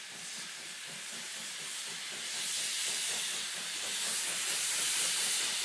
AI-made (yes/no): yes